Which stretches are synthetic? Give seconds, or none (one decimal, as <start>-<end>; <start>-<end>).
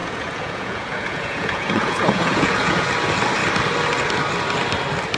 0.0-2.9